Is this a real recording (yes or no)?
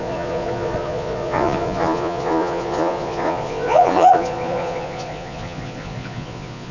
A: no